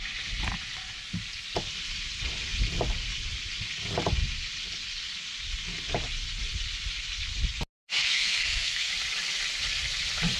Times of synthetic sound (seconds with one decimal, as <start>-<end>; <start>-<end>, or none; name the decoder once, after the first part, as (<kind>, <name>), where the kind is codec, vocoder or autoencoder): 8.0-8.9 (codec, SNAC)